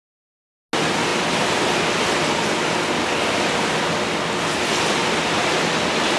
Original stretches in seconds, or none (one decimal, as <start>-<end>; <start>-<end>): 0.0-6.2